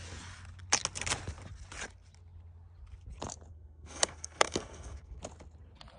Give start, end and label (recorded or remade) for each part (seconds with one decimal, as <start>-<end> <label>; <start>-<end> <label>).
0.0-3.5 recorded; 3.5-5.2 remade; 5.2-6.0 recorded